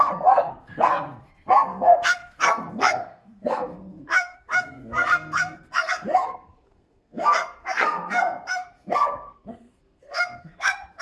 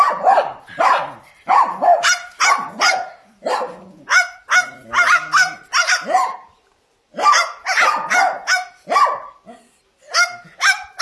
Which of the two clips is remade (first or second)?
first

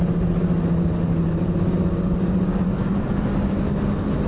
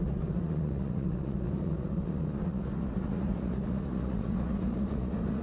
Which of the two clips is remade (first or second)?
second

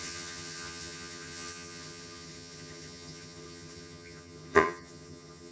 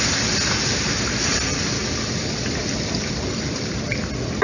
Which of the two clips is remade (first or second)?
first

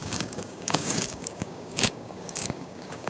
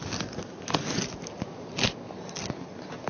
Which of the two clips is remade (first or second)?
first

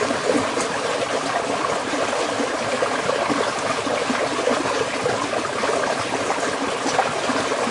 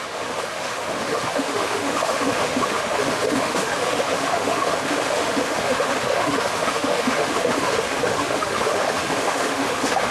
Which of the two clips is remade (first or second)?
second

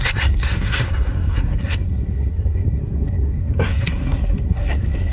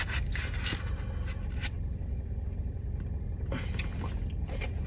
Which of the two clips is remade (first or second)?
first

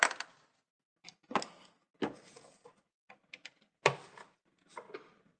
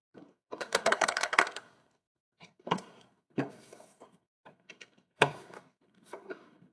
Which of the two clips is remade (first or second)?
second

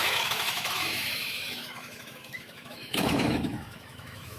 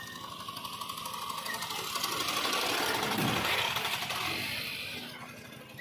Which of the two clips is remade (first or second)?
first